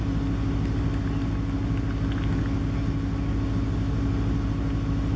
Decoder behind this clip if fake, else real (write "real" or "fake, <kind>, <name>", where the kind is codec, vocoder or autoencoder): real